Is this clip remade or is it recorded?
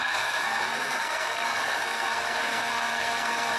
remade